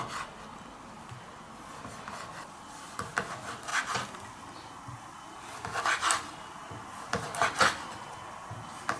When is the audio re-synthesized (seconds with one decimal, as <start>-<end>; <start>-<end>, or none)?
none